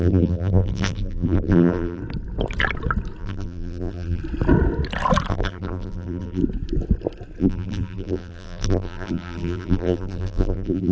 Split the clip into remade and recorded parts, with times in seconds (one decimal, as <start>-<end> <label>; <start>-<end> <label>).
0.0-2.0 remade; 2.0-3.2 recorded; 3.2-4.2 remade; 4.2-5.3 recorded; 5.3-6.4 remade; 6.4-7.4 recorded; 7.4-10.9 remade